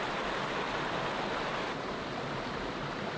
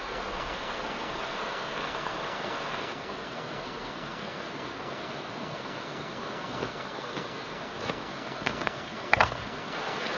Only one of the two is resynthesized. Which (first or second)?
second